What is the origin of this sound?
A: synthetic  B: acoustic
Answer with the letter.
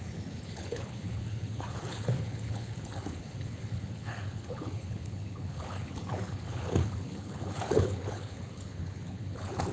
A